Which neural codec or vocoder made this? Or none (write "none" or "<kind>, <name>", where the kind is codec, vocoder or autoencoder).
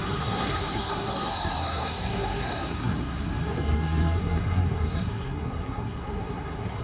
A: codec, SNAC